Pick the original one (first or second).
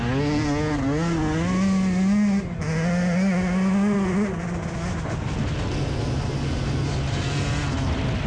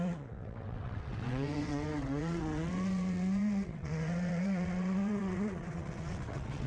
first